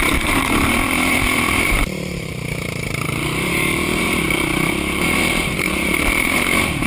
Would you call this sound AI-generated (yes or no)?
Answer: yes